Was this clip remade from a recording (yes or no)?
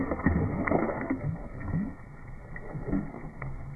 yes